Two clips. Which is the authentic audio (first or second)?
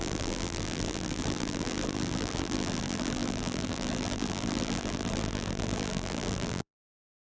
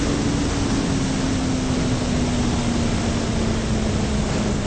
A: second